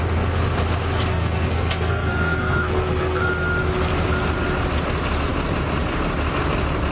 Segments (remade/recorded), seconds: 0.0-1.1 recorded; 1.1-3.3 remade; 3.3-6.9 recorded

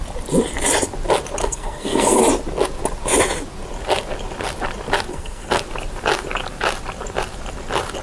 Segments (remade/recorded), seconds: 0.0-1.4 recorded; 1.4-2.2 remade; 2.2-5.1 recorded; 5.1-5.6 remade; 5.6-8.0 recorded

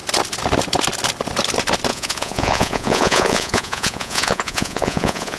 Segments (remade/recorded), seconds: 0.0-1.9 recorded; 1.9-5.4 remade

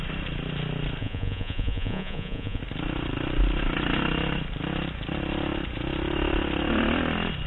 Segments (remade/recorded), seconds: 0.0-1.0 recorded; 1.0-2.6 remade; 2.6-7.5 recorded

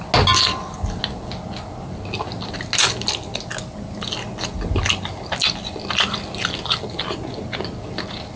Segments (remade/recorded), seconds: 0.0-8.4 recorded

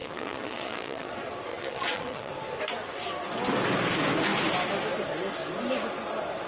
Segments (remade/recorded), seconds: 0.0-1.1 remade; 1.1-1.5 recorded; 1.5-2.3 remade; 2.3-6.5 recorded